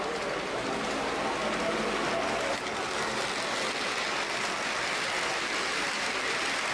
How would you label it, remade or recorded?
recorded